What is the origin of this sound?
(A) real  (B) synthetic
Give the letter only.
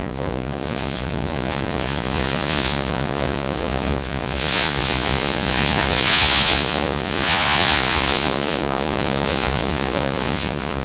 B